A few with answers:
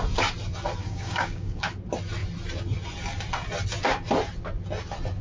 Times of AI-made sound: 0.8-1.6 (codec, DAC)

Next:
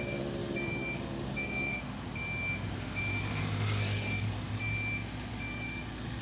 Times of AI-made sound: 0.4-1.8 (codec, DAC); 3.1-4.7; 5.3-6.2

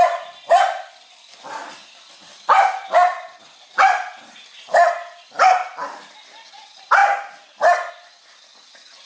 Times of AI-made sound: none

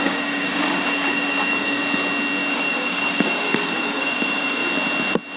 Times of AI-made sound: 0.0-1.8 (codec, DAC); 2.5-4.6

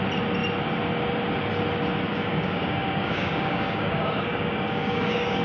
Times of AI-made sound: 2.1-5.4 (codec, DAC)

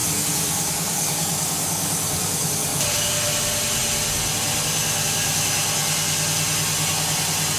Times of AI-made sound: 0.0-3.1 (codec, DAC)

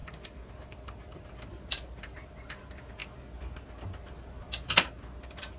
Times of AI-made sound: none